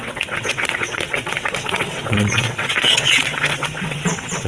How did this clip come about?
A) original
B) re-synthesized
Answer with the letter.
B